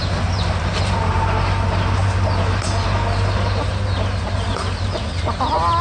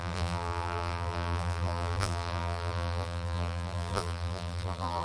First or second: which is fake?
second